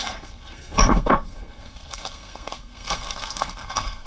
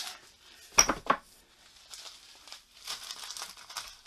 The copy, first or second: first